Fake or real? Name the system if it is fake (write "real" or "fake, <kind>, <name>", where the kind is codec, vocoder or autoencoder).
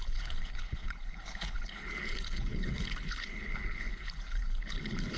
fake, codec, HILCodec